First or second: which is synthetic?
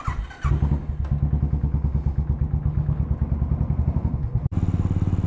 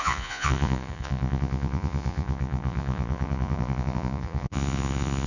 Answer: second